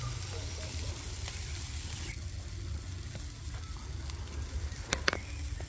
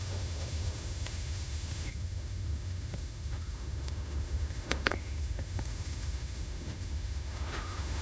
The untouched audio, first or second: first